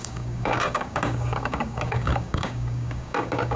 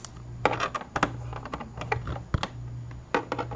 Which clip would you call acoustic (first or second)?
second